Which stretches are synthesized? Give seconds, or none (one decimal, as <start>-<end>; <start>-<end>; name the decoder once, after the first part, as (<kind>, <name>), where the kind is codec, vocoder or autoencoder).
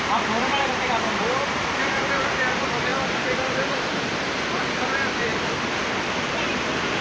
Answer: 2.9-4.3 (vocoder, BigVGAN v2); 5.3-6.0